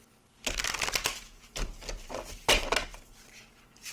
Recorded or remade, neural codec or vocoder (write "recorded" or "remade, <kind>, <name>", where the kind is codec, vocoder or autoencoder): recorded